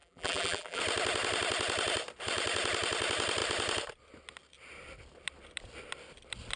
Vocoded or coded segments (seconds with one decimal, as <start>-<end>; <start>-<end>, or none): 0.0-0.8